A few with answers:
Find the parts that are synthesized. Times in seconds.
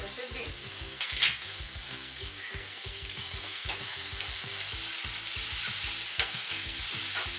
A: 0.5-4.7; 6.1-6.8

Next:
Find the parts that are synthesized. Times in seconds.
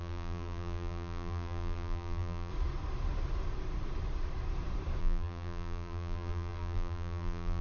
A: 0.0-2.5; 5.0-7.6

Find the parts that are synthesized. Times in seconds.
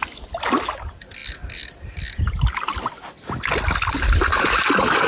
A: none